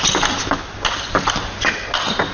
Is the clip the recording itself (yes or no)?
yes